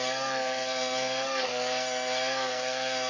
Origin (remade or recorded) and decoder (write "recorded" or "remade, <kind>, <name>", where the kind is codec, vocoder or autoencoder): remade, codec, SNAC